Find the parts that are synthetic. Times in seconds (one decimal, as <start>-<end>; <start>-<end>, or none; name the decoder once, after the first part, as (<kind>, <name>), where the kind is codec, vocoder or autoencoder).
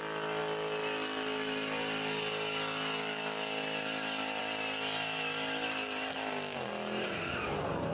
none